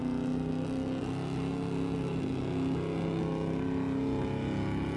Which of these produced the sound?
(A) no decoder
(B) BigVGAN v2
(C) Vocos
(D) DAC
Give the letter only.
A